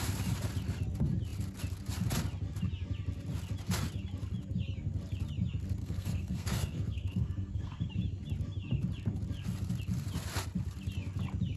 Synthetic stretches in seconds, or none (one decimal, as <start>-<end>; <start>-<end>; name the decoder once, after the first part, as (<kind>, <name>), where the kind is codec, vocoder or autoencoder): 5.8-7.9 (codec, SNAC)